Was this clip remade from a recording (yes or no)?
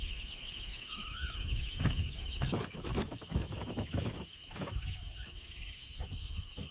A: yes